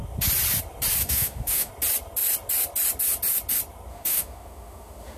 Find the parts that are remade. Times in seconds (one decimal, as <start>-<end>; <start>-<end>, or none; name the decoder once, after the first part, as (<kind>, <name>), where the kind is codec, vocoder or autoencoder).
1.0-1.7 (autoencoder, DAC-VAE); 3.9-5.2